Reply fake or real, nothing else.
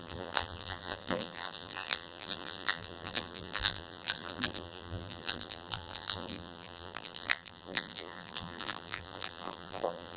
fake